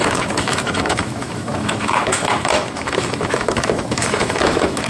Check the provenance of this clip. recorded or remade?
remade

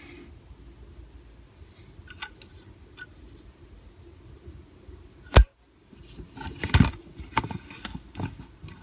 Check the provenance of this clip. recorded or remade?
recorded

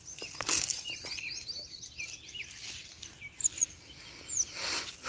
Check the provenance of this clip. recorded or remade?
recorded